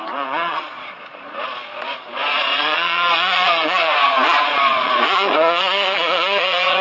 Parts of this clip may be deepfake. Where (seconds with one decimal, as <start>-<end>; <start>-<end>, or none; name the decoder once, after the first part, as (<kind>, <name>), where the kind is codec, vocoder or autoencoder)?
0.0-6.8 (vocoder, Vocos)